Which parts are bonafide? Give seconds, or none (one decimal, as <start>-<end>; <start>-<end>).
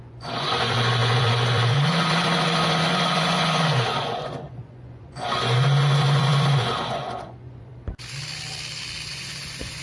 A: 7.7-9.1